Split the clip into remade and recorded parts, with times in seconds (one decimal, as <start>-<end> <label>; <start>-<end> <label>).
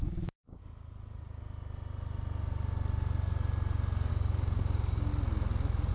0.0-0.6 remade; 0.6-4.1 recorded; 4.1-5.1 remade; 5.1-5.9 recorded